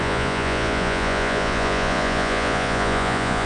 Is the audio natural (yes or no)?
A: no